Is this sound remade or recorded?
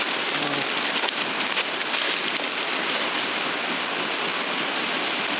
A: recorded